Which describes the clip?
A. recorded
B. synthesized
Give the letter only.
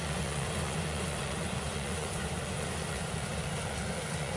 B